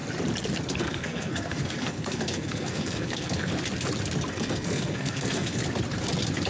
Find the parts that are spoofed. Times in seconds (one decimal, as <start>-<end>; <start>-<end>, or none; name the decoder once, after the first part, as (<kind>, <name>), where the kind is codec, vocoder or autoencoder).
0.8-3.5 (codec, SNAC); 4.3-5.6